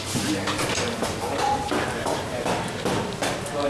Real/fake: real